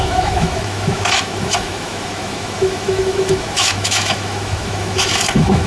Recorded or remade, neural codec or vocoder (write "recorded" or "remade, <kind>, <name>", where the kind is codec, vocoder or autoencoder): remade, autoencoder, DAC-VAE